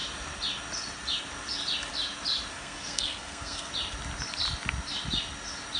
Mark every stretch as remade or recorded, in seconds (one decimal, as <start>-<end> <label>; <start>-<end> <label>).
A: 0.0-2.5 recorded; 2.5-3.7 remade; 3.7-5.8 recorded

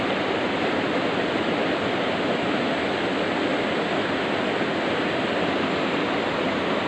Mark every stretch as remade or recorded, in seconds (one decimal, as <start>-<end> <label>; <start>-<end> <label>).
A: 0.0-6.9 recorded